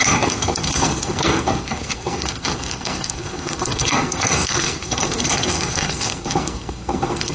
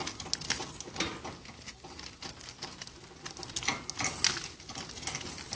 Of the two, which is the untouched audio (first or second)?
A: second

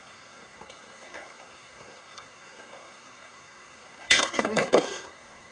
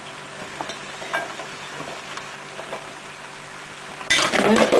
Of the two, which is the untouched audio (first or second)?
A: second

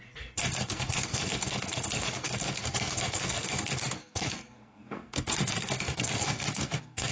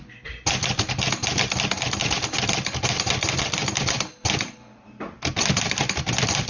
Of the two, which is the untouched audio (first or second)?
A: second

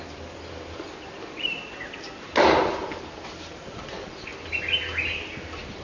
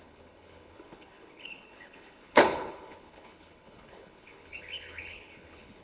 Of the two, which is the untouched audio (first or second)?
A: first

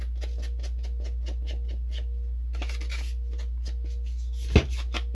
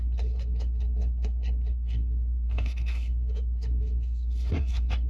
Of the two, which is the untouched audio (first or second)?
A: first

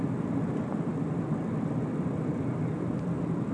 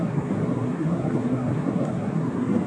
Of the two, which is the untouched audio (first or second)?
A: first